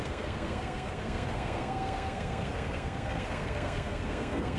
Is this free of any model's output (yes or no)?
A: no